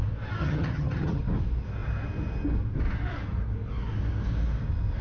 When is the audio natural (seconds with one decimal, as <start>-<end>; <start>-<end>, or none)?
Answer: 0.0-0.4; 1.2-5.0

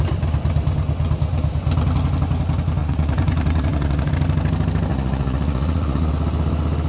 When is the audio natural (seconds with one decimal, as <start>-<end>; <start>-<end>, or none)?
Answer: 0.0-2.8; 4.1-4.9; 6.1-6.9